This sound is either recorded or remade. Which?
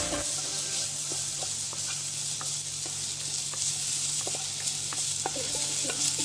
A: recorded